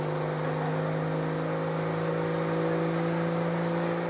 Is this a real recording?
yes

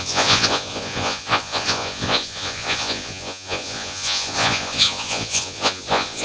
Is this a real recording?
no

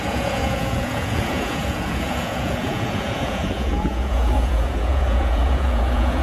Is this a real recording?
no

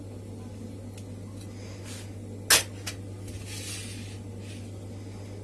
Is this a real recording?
yes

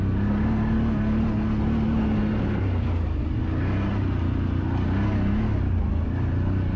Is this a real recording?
yes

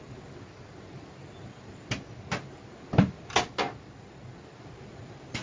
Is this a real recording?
yes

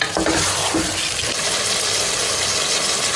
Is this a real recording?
yes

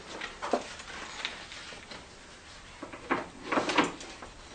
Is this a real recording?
yes